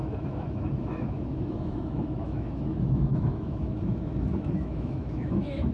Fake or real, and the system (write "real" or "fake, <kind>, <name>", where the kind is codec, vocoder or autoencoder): fake, autoencoder, DAC-VAE